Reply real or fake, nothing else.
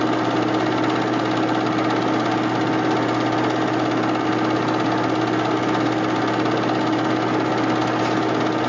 real